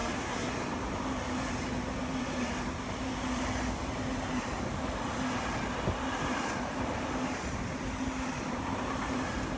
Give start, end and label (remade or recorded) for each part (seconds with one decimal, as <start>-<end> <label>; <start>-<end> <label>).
0.0-0.5 remade; 0.5-9.6 recorded